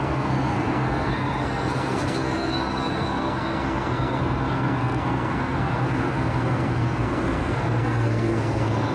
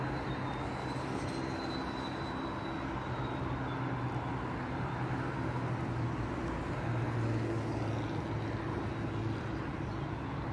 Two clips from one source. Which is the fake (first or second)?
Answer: first